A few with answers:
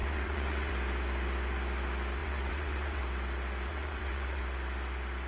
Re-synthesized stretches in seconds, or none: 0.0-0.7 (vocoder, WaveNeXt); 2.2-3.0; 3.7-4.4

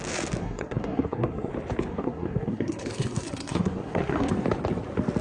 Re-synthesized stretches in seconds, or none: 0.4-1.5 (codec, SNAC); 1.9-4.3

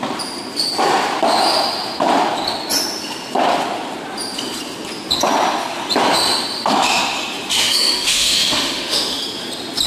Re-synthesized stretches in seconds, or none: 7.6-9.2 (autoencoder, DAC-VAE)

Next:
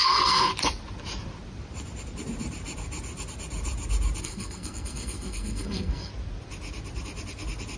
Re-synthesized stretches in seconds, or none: 0.0-0.5 (codec, SNAC); 4.2-6.1

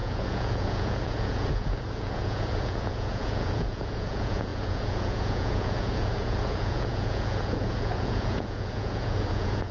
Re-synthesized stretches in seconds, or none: 0.0-9.7 (vocoder, Vocos)

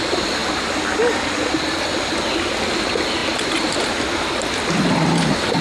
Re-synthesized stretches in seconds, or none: none